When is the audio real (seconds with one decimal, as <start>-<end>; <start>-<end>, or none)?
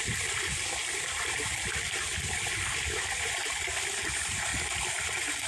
4.5-5.5